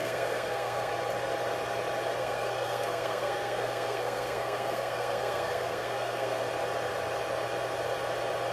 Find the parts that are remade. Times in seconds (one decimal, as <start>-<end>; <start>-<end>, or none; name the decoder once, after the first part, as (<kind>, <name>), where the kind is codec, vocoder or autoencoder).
0.0-0.9 (codec, SNAC); 2.2-6.4